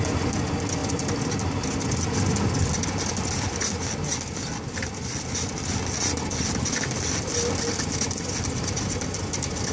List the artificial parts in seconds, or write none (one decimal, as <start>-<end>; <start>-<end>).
none